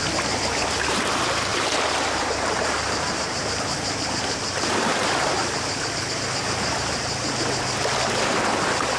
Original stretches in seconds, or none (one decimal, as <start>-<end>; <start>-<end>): 0.0-1.5; 4.9-5.4; 7.3-9.0